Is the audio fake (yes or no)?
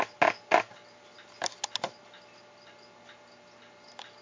no